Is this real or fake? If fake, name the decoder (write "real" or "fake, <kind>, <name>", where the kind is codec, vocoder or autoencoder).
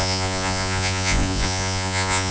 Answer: fake, vocoder, Vocos